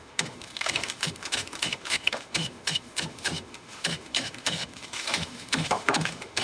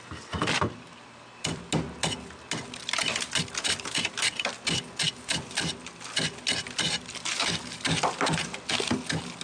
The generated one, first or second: first